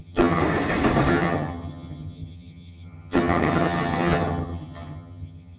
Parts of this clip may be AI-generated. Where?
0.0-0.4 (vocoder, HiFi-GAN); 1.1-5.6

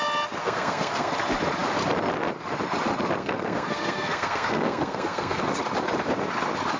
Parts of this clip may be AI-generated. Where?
0.4-1.1 (codec, SNAC); 3.2-5.4

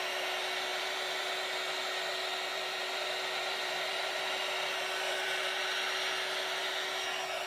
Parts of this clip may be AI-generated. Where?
0.7-1.3 (vocoder, BigVGAN v2); 2.5-4.2; 4.9-5.4

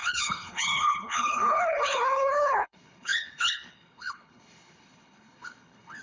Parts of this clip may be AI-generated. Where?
0.0-6.0 (codec, HILCodec)

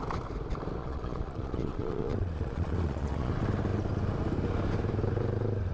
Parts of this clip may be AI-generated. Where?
0.8-3.3 (vocoder, Vocos)

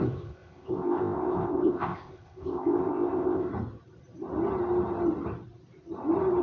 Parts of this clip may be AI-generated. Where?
0.0-3.5 (codec, ZipCodec)

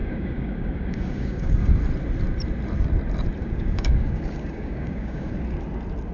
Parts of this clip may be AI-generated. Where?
0.0-1.8 (codec, DAC); 3.4-5.3

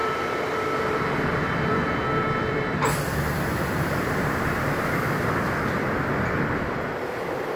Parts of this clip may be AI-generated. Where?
0.0-4.6 (vocoder, BigVGAN v2)